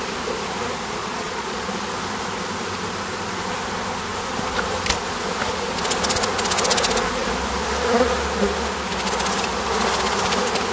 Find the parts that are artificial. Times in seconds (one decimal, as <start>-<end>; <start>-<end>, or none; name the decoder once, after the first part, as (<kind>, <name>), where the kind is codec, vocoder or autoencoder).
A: 1.0-1.7 (vocoder, Vocos)